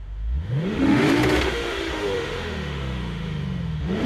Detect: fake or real fake